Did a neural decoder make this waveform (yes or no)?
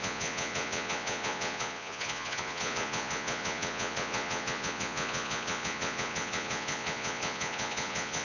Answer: yes